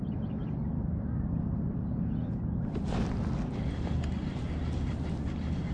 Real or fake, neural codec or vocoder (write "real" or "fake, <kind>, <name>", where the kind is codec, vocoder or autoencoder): real